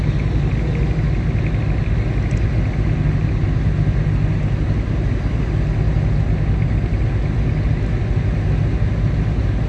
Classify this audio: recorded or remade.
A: recorded